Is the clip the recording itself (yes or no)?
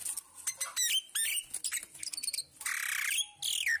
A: yes